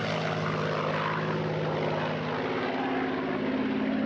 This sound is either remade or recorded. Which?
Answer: recorded